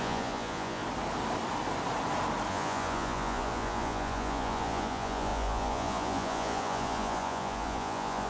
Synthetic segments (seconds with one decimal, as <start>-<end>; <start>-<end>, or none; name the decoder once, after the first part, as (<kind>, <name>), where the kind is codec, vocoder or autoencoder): 0.0-0.8 (vocoder, Vocos); 2.5-8.3